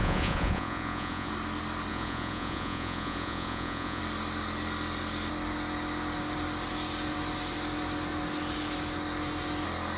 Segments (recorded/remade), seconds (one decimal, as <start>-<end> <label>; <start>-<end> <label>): 0.0-1.3 remade; 1.3-1.9 recorded; 1.9-4.0 remade; 4.0-10.0 recorded